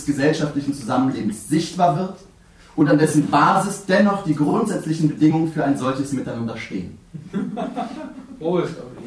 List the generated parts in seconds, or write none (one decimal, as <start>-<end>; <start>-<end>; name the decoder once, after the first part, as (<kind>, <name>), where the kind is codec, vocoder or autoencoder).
0.0-3.3 (vocoder, BigVGAN v2); 4.1-7.5